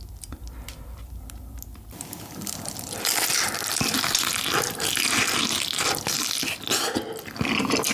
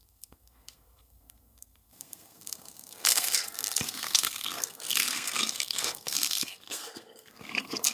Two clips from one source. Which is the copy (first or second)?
second